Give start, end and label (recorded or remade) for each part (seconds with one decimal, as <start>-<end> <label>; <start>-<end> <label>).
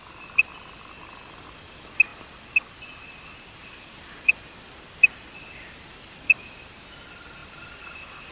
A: 0.0-2.1 recorded; 2.1-6.7 remade; 6.7-8.3 recorded